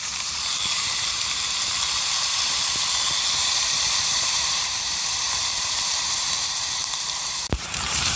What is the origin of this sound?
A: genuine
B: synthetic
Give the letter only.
B